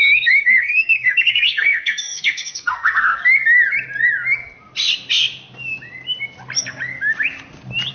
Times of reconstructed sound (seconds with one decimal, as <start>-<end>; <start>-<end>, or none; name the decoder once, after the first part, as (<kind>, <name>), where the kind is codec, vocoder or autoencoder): 0.0-3.2 (codec, SNAC)